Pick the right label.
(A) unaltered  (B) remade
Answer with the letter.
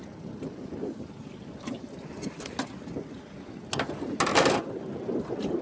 A